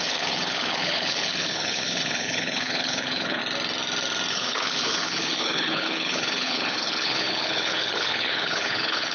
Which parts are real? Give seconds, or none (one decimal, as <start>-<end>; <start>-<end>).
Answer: 3.4-4.3